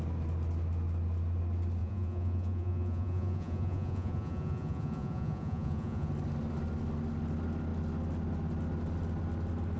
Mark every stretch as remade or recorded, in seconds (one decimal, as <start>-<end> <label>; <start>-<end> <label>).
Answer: 0.0-1.8 recorded; 1.8-6.1 remade; 6.1-9.8 recorded